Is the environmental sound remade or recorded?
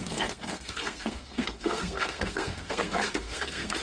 remade